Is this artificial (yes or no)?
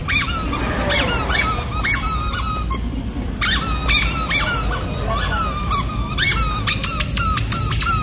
no